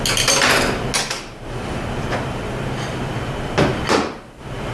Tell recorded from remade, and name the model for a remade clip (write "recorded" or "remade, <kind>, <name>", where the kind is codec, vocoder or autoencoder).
recorded